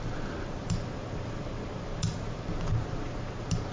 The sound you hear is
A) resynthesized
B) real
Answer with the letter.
B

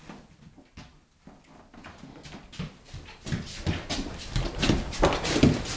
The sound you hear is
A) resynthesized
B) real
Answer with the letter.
B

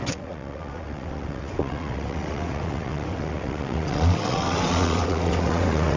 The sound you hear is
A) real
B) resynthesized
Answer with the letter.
B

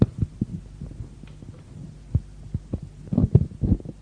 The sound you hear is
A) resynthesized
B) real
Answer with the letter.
B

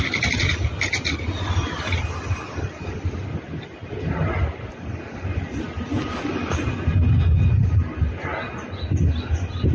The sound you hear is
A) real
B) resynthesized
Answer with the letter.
A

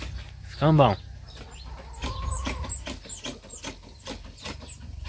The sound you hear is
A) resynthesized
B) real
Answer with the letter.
B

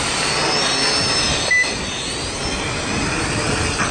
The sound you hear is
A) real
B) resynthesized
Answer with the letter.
A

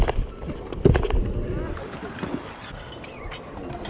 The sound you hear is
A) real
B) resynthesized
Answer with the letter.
A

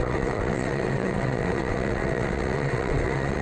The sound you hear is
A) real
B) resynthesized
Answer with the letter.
B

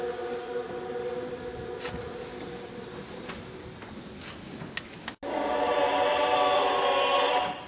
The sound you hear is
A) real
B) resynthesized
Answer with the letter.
A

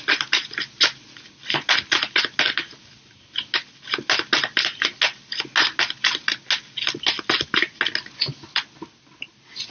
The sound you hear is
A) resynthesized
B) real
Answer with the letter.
B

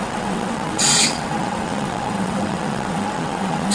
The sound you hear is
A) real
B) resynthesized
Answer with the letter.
B